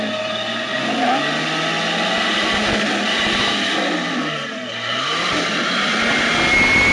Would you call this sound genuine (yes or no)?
yes